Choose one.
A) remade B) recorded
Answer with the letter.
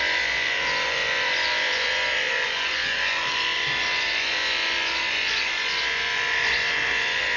A